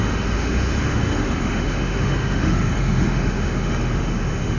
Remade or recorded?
remade